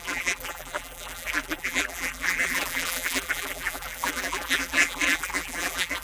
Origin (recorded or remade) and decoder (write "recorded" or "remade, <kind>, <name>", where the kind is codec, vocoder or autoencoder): remade, vocoder, BigVGAN v2